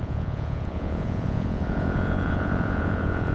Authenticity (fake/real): fake